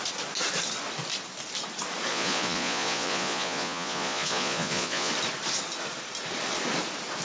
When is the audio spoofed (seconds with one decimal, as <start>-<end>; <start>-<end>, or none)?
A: 2.1-5.1